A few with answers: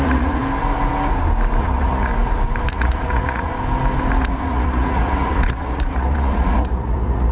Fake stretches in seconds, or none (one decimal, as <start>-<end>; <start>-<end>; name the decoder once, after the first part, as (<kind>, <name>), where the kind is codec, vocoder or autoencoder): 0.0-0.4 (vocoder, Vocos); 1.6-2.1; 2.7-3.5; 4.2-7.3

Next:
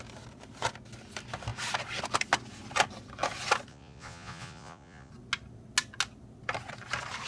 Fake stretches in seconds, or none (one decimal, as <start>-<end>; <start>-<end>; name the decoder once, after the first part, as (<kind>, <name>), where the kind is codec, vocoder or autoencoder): 3.7-5.1 (vocoder, Vocos)

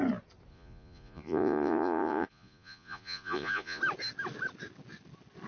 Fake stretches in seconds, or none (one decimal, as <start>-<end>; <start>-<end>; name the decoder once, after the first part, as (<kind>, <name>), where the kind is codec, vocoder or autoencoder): 0.5-3.8 (vocoder, Vocos)

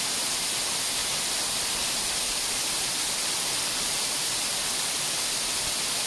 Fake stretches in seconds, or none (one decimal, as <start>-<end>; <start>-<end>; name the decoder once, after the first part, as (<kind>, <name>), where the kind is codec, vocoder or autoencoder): none